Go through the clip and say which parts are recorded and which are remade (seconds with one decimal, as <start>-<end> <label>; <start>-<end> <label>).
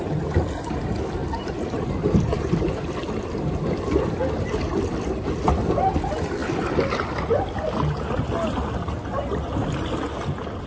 0.0-10.7 recorded